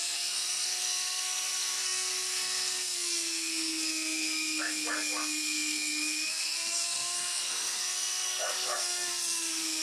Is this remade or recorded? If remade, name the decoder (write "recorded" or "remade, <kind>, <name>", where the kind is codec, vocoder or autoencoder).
remade, codec, SNAC